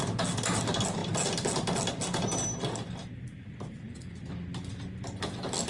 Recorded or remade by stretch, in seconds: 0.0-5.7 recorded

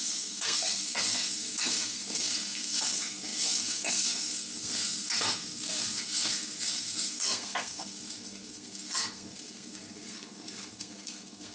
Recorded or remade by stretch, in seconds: 0.0-11.5 remade